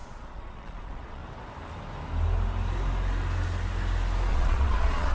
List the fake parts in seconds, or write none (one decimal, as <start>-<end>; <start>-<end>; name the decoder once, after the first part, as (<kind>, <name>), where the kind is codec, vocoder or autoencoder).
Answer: 0.0-1.2 (vocoder, Vocos); 4.3-5.1